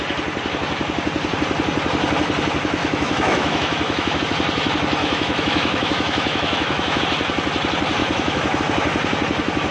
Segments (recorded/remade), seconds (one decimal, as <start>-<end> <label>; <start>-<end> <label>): 0.0-2.8 recorded; 2.8-4.2 remade; 4.2-5.0 recorded; 5.0-7.0 remade; 7.0-8.0 recorded; 8.0-8.6 remade; 8.6-9.7 recorded